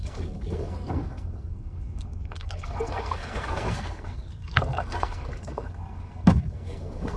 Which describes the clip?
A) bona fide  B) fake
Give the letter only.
B